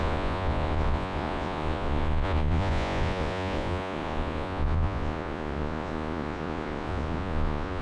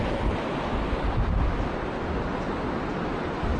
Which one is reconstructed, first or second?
first